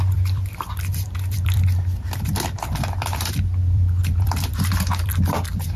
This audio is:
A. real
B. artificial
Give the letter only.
B